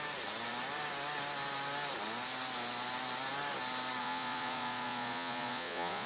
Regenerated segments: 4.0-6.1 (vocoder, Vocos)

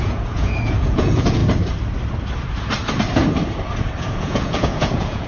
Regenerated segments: 0.0-1.4 (vocoder, Vocos); 4.0-5.3